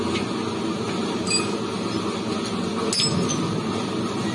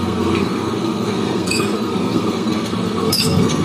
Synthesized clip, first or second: second